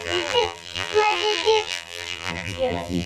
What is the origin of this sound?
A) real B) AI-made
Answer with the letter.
B